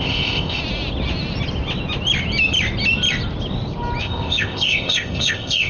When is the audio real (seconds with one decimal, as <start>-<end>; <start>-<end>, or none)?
0.6-4.0